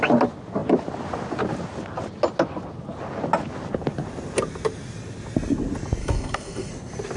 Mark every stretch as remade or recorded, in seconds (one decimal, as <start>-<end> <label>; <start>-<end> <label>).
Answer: 0.0-6.0 recorded; 6.0-6.7 remade; 6.7-7.2 recorded